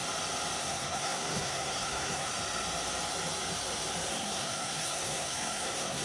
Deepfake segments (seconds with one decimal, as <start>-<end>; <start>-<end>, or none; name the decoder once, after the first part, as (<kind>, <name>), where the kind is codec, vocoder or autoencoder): 0.6-2.3 (codec, SNAC); 4.1-6.0